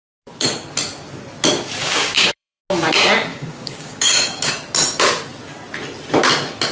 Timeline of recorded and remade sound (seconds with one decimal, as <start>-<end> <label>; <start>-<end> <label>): 0.0-1.8 recorded; 1.8-2.6 remade; 2.6-3.3 recorded; 3.3-4.5 remade; 4.5-6.7 recorded